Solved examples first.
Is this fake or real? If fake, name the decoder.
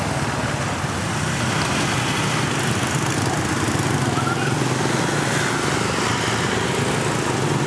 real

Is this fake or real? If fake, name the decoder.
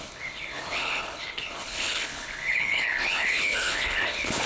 fake, codec, HILCodec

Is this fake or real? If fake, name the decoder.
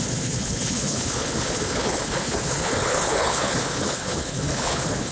fake, codec, HILCodec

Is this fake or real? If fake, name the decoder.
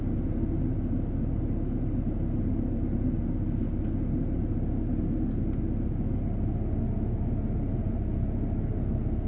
real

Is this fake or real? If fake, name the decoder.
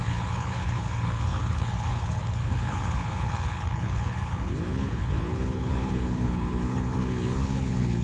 fake, codec, HILCodec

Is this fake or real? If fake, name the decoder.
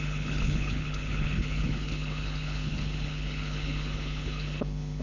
fake, codec, HILCodec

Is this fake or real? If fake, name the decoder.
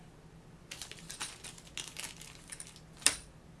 real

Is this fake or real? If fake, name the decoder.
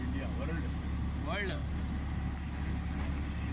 real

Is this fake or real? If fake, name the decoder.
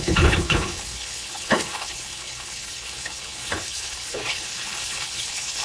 fake, codec, HILCodec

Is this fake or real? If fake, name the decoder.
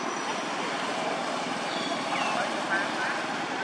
real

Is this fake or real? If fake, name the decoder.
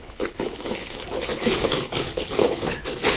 fake, codec, HILCodec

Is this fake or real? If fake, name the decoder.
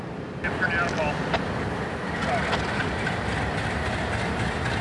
real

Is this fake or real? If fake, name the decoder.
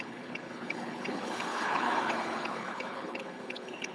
fake, codec, HILCodec